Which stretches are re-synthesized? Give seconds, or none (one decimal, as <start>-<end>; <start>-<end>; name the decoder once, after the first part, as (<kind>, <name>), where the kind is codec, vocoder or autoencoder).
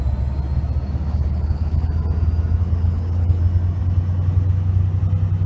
1.1-1.9 (codec, HILCodec); 2.6-3.4